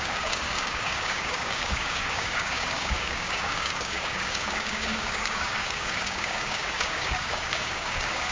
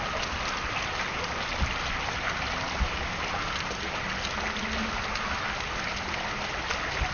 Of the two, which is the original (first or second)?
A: second